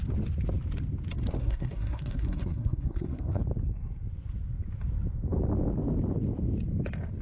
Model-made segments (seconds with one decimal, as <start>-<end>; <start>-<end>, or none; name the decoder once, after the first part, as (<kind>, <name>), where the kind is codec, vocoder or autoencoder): 1.4-3.4 (codec, SNAC)